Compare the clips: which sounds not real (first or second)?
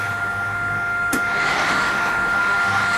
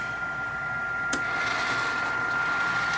first